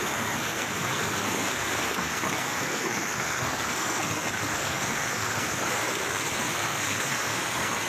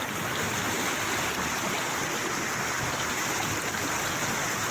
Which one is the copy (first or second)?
first